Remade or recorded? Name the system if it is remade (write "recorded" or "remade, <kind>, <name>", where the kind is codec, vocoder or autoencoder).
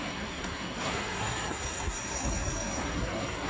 remade, codec, SNAC